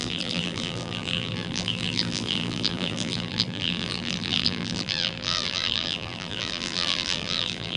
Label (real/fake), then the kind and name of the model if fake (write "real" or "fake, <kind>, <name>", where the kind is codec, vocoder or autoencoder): fake, vocoder, BigVGAN v2